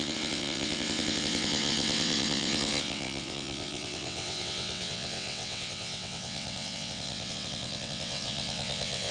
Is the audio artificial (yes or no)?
yes